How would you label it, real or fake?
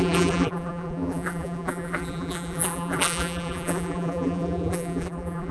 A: fake